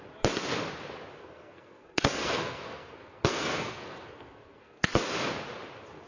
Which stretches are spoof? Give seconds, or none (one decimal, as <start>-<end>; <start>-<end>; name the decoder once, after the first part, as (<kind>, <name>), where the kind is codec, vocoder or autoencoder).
1.2-4.9 (codec, SNAC)